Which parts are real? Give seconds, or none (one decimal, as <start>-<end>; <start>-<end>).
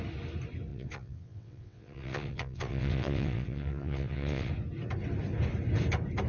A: 0.0-0.7; 4.5-6.3